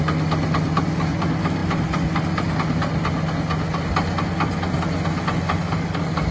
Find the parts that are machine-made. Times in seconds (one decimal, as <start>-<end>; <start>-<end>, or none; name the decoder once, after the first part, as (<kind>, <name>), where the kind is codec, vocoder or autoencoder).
none